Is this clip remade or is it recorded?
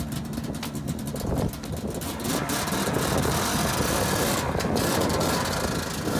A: recorded